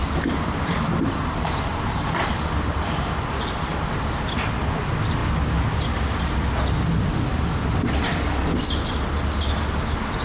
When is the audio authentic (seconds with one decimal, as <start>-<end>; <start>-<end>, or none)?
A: 3.1-10.2